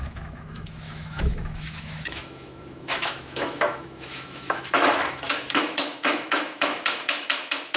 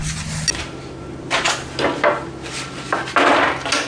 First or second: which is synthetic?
first